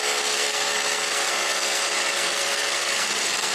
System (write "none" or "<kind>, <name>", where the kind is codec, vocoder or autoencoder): codec, SNAC